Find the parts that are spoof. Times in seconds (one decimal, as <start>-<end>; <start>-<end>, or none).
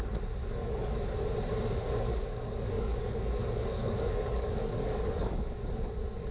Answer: 0.4-1.0; 1.8-5.6